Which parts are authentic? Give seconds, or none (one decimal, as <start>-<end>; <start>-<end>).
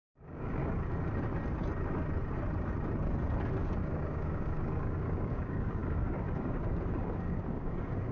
0.6-3.8